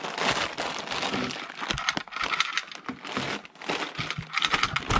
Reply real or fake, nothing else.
real